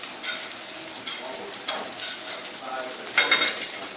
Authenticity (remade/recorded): recorded